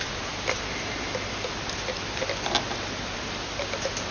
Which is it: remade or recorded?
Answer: recorded